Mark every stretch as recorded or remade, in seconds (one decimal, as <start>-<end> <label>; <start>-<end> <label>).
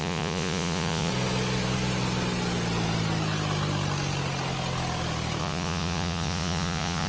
0.0-1.1 remade; 1.1-5.4 recorded; 5.4-7.1 remade